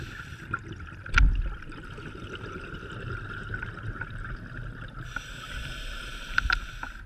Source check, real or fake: real